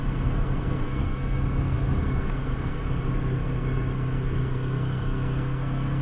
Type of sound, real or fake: fake